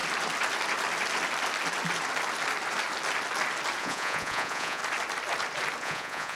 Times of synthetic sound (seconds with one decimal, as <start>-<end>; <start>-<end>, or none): 3.8-4.8; 5.8-6.4